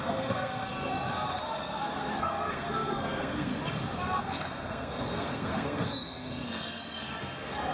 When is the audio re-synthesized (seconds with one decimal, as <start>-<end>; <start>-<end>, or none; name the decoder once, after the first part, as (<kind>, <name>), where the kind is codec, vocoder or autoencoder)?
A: 0.0-0.9 (codec, SNAC); 1.6-3.5; 4.2-7.7